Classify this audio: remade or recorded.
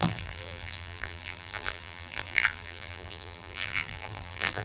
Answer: remade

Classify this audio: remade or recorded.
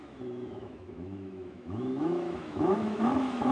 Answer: remade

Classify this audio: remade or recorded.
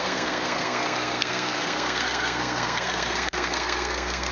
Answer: remade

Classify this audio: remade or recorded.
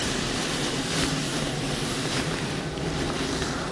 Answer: remade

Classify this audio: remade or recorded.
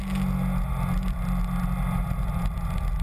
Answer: recorded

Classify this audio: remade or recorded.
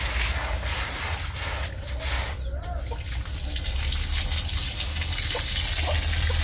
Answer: recorded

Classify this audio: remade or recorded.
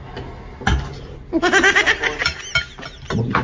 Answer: recorded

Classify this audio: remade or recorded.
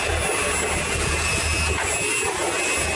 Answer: recorded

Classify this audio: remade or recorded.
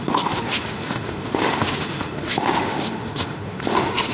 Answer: remade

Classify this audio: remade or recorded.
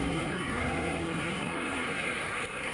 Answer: remade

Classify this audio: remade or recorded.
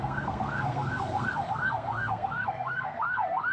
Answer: remade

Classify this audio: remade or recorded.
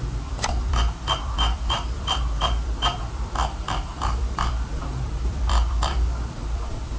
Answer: remade